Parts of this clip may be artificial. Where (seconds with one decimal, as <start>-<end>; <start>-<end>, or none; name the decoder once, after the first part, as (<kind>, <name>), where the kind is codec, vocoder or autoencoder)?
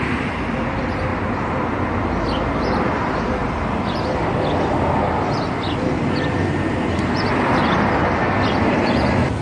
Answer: none